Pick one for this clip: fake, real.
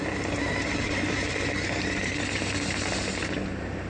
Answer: real